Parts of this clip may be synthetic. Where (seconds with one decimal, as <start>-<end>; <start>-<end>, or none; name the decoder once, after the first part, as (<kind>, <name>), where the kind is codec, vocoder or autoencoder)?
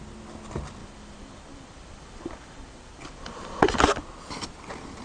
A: 0.8-3.8 (vocoder, BigVGAN v2)